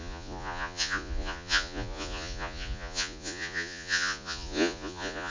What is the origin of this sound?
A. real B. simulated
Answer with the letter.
B